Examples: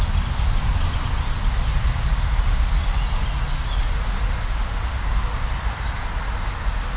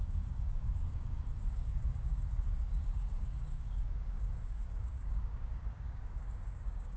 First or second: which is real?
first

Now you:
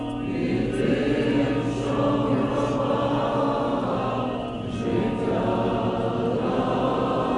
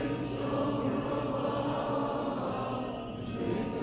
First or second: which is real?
first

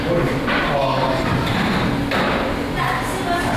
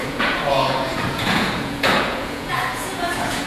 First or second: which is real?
first